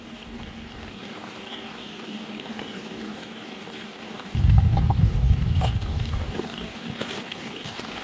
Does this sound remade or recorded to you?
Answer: remade